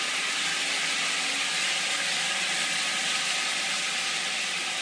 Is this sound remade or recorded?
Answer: recorded